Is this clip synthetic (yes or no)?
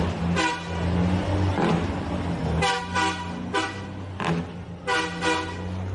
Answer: no